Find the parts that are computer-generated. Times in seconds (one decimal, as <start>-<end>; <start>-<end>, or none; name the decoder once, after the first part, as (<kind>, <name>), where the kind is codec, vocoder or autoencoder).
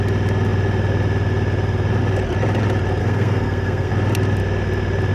3.0-3.9 (codec, SNAC)